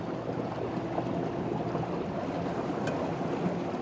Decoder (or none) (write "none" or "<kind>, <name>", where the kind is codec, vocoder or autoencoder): none